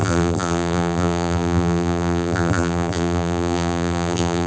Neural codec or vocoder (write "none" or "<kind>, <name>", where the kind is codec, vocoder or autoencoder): vocoder, BigVGAN v2